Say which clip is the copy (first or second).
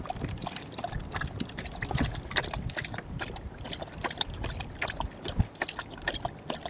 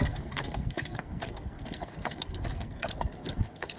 second